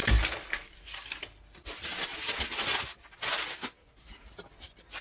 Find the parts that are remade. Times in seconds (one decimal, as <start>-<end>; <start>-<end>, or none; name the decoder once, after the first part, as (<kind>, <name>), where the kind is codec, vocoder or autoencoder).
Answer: none